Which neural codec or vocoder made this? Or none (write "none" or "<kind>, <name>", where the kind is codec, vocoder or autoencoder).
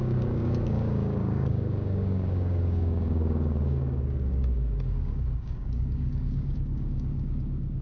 codec, DAC